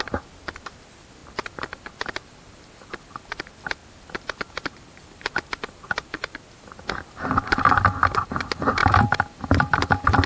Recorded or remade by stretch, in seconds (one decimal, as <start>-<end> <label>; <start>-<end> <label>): 0.0-10.3 recorded